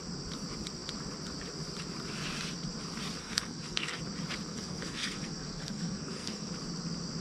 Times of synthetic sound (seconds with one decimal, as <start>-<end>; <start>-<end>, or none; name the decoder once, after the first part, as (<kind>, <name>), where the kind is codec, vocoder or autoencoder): 3.2-4.0 (codec, SNAC); 4.5-6.5